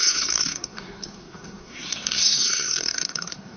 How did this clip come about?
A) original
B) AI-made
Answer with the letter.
B